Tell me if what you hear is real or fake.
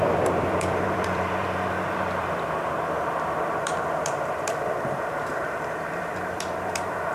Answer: fake